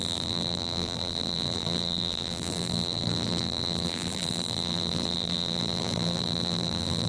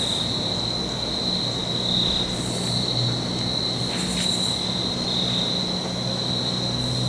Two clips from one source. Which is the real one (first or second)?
second